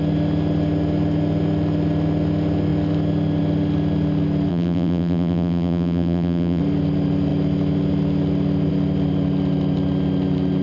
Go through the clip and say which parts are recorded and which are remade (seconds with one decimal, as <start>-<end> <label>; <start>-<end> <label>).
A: 0.0-4.5 recorded; 4.5-6.6 remade; 6.6-10.6 recorded